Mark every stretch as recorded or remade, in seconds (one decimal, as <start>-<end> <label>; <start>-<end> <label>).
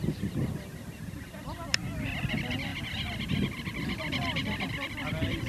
0.0-0.7 recorded; 0.7-1.4 remade; 1.4-5.5 recorded